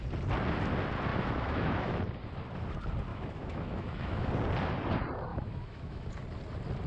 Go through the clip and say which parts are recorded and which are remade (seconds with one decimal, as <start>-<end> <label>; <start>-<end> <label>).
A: 0.0-1.1 recorded; 1.1-2.0 remade; 2.0-3.1 recorded; 3.1-4.3 remade; 4.3-5.3 recorded; 5.3-6.1 remade; 6.1-6.9 recorded